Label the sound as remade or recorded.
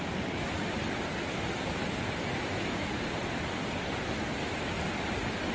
recorded